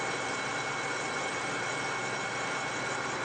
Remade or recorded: recorded